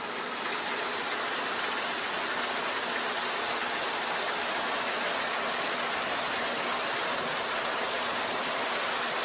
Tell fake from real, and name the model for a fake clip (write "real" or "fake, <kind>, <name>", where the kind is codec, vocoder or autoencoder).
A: real